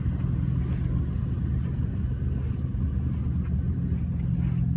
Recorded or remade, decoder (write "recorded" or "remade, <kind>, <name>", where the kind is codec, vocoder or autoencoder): recorded